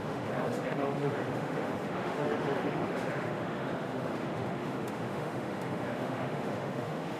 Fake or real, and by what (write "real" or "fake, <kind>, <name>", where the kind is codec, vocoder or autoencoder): fake, autoencoder, DAC-VAE